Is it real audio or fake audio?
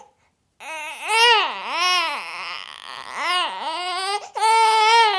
real